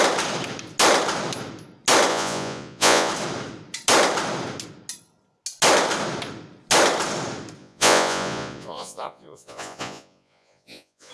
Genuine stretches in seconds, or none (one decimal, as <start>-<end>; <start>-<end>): 0.0-2.1; 3.1-7.6